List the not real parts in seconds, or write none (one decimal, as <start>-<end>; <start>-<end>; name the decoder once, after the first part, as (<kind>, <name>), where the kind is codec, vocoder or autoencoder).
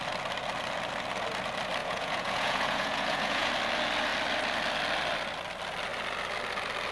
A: 1.8-3.5 (vocoder, Vocos)